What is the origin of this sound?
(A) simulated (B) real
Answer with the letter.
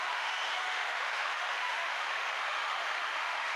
A